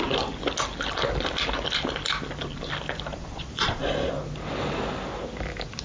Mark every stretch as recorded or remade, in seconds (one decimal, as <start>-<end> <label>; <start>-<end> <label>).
0.0-3.1 recorded; 3.1-4.1 remade; 4.1-5.8 recorded